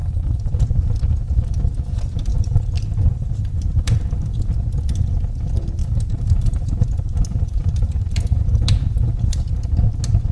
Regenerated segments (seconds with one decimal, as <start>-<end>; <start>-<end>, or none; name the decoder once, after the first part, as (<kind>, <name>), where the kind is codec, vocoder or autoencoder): 0.0-0.6 (vocoder, BigVGAN v2); 2.3-4.4; 5.8-9.5